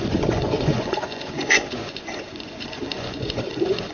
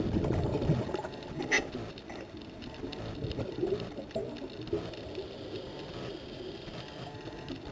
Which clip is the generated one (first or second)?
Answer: first